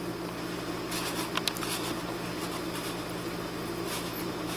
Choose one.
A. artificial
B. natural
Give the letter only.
B